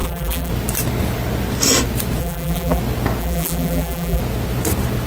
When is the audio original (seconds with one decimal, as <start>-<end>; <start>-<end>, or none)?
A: 0.5-2.2; 2.8-3.2; 4.2-5.1